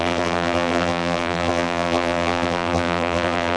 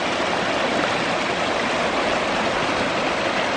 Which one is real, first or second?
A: second